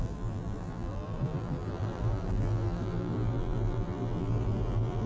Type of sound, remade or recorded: remade